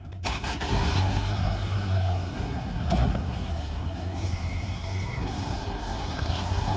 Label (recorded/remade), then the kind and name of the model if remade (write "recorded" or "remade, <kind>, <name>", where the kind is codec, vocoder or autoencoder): remade, codec, SNAC